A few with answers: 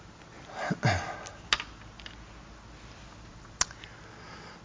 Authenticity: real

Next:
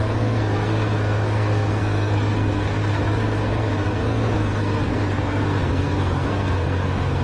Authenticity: fake